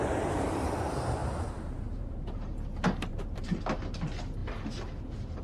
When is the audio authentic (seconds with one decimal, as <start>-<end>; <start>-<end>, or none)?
0.0-1.2; 2.2-3.1; 3.6-5.4